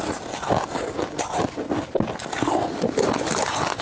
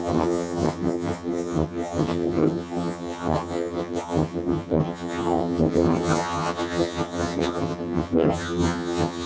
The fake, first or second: second